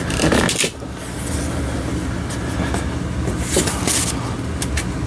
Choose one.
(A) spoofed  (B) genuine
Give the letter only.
B